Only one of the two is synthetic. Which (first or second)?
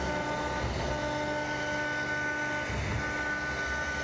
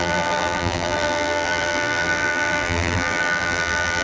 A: second